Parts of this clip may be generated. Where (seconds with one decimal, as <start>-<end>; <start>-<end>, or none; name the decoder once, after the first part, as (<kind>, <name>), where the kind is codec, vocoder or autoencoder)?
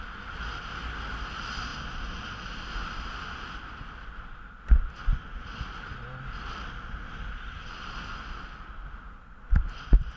none